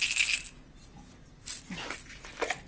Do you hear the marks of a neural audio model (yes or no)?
no